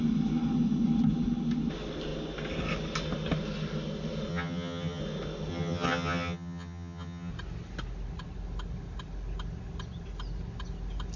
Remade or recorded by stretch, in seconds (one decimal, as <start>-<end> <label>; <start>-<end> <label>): 0.0-4.3 recorded; 4.3-5.0 remade; 5.0-5.5 recorded; 5.5-7.3 remade; 7.3-11.2 recorded